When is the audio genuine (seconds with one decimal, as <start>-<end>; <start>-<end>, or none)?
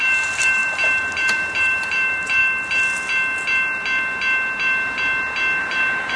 2.4-5.6